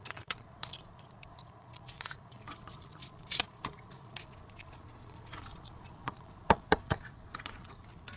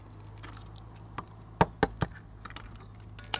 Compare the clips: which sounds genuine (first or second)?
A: second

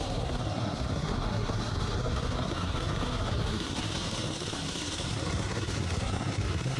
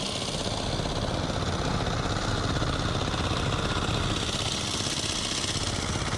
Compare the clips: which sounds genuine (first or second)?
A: second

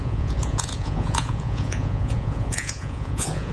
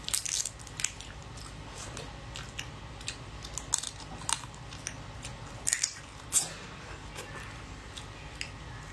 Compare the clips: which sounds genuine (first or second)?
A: second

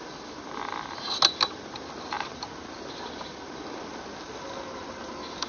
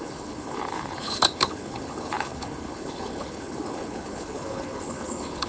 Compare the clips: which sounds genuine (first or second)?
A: first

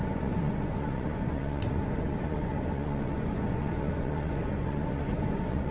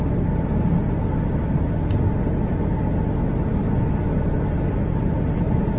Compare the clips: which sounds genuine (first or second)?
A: second